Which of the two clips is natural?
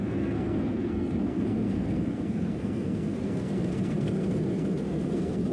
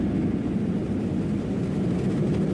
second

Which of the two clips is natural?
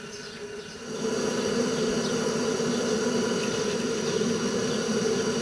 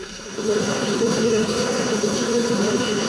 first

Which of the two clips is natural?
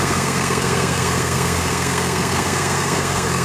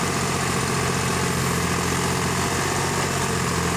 second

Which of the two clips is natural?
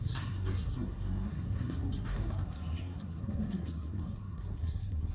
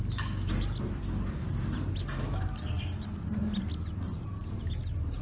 second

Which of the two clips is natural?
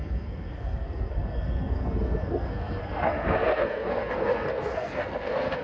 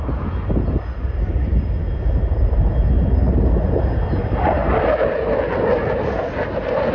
second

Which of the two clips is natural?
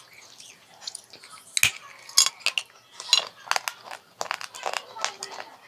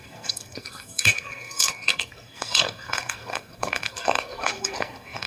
first